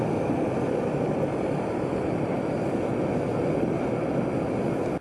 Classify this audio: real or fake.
real